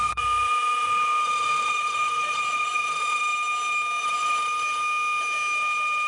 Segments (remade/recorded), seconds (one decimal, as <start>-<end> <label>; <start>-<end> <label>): 0.0-3.2 remade; 3.2-4.0 recorded; 4.0-4.4 remade; 4.4-6.1 recorded